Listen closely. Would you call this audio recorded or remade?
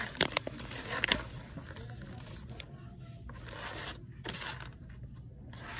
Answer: recorded